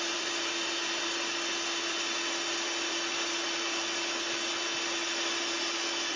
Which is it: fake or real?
real